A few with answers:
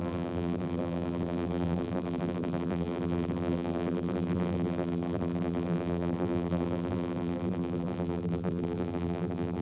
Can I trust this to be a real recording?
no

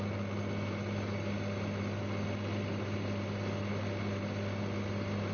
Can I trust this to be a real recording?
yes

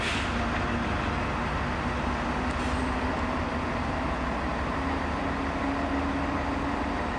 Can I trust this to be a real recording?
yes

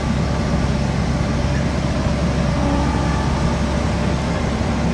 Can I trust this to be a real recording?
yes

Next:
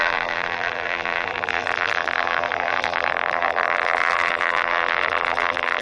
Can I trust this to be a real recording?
no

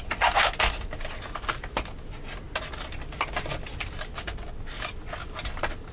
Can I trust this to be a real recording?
yes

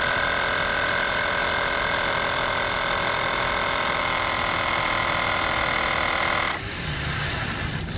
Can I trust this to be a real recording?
no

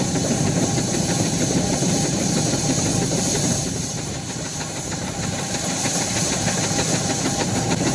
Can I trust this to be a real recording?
no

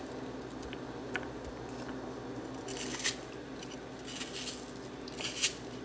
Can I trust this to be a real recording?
yes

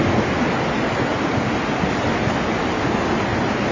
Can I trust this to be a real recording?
yes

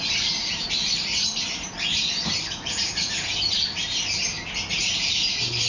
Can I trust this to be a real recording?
no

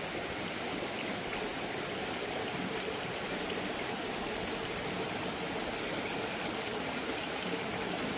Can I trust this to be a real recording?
yes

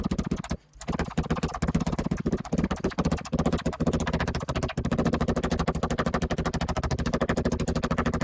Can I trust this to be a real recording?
yes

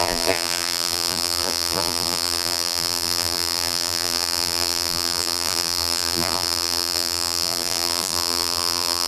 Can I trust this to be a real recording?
no